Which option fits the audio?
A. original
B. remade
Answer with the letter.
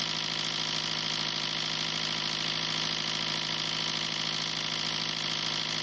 A